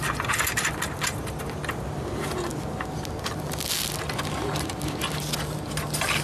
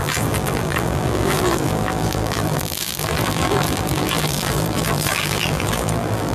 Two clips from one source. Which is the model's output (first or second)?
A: second